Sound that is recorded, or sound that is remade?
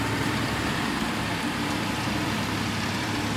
remade